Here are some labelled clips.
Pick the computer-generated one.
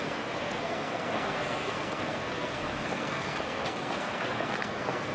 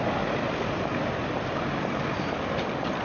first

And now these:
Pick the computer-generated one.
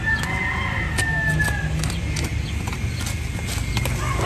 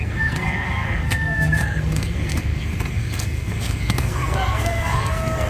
second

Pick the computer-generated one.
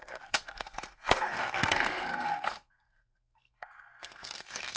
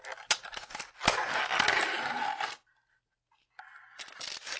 first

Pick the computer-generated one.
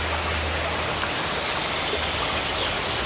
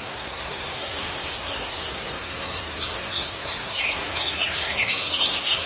second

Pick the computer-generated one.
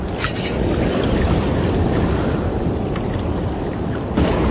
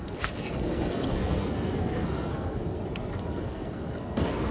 second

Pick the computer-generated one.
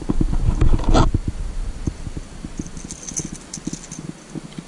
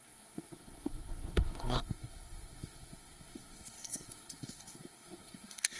second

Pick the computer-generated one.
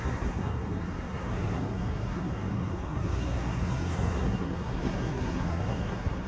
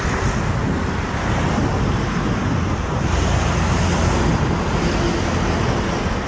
first